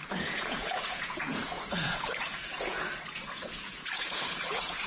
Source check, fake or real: fake